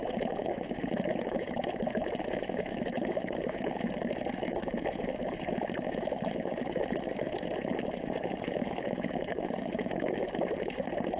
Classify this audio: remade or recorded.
remade